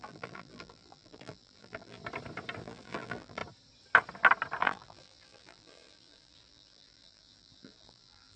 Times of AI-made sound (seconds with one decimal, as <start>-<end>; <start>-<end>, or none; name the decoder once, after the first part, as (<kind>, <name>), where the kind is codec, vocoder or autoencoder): 0.0-2.0 (vocoder, BigVGAN v2); 2.6-3.4; 4.6-8.4